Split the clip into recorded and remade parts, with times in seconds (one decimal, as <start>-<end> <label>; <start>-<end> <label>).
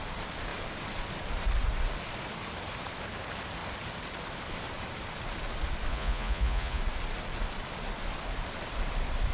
0.0-5.9 recorded; 5.9-6.8 remade; 6.8-9.3 recorded